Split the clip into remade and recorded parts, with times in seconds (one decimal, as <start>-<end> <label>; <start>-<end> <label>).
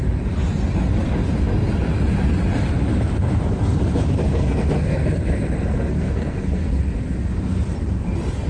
0.0-4.2 recorded; 4.2-6.8 remade; 6.8-8.5 recorded